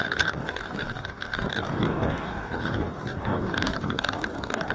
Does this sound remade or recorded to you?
remade